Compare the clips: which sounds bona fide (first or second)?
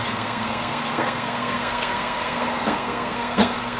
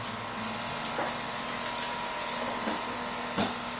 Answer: second